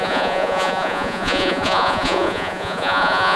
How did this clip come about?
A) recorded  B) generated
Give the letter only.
B